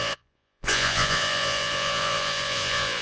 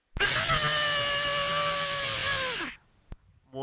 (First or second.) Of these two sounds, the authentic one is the second